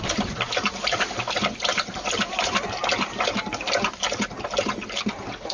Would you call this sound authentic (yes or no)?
yes